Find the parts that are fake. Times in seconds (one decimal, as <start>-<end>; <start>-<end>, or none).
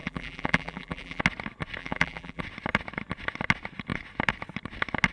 0.0-1.2; 1.8-2.4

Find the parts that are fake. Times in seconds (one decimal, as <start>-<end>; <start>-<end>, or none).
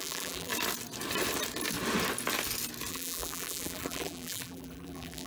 0.0-0.5; 2.9-5.3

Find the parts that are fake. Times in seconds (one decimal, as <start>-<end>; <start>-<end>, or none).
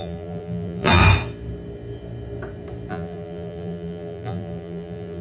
0.0-1.0; 2.9-5.2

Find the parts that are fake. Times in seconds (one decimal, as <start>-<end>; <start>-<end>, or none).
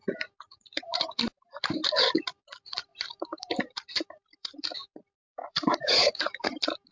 0.0-1.8; 2.4-6.9